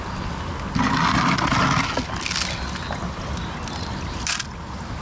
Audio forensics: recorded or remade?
recorded